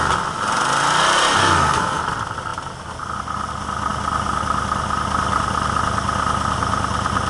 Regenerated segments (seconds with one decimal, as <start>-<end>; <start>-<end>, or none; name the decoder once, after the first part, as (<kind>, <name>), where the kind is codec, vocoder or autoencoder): 1.4-2.0 (codec, SNAC)

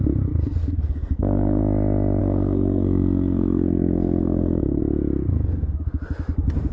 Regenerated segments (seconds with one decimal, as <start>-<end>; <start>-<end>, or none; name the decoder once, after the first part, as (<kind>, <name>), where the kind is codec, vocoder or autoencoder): 0.6-1.6 (codec, SNAC); 2.2-4.8

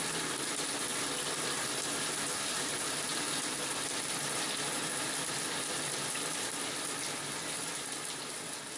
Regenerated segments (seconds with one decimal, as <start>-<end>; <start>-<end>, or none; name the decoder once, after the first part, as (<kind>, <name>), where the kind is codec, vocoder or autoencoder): none

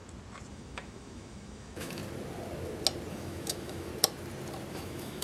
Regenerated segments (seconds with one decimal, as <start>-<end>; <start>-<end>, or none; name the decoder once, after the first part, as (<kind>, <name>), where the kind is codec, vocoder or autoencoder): 0.5-2.0 (autoencoder, DAC-VAE); 3.1-3.9; 4.7-5.2

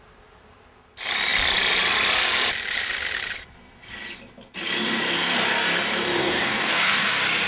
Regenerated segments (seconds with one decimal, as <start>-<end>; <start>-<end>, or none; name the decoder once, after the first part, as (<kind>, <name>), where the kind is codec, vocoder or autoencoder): 6.2-7.1 (codec, DAC)

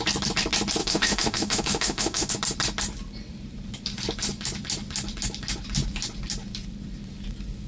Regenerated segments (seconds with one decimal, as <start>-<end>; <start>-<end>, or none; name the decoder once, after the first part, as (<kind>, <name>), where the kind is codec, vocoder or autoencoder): 0.8-2.3 (autoencoder, DAC-VAE)

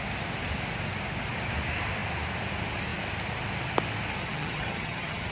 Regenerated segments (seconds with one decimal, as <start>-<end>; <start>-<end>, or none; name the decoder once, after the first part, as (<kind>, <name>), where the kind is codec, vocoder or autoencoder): 4.2-5.3 (vocoder, HiFi-GAN)

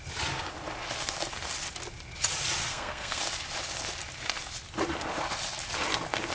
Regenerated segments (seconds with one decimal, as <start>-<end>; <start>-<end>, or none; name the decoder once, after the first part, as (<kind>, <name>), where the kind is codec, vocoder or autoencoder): 2.6-3.2 (codec, SNAC)